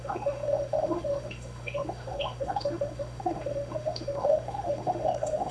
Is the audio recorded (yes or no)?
no